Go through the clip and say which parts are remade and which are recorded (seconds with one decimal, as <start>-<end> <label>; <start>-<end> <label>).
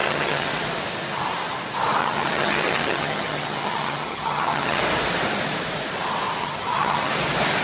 0.0-0.5 remade; 0.5-2.0 recorded; 2.0-4.8 remade; 4.8-6.4 recorded; 6.4-7.1 remade; 7.1-7.6 recorded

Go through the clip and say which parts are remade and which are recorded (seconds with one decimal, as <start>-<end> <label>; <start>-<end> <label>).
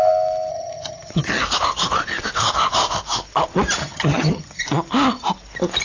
0.0-0.5 recorded; 0.5-1.4 remade; 1.4-3.8 recorded; 3.8-4.6 remade; 4.6-5.8 recorded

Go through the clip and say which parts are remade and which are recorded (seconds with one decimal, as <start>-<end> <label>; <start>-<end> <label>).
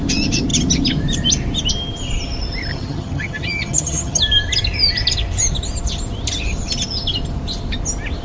0.0-2.7 recorded; 2.7-4.2 remade; 4.2-8.2 recorded